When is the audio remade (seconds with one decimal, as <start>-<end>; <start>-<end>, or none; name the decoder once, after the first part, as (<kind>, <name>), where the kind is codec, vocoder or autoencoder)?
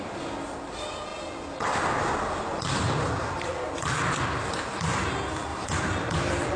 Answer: none